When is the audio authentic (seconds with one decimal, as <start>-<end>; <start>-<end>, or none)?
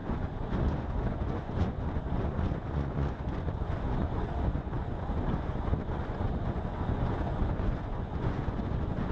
none